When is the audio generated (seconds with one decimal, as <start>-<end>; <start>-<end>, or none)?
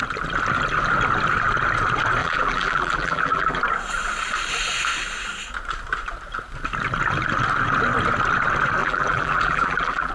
2.2-3.6; 8.8-10.1